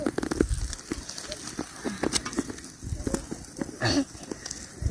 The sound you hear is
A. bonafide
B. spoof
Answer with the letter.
A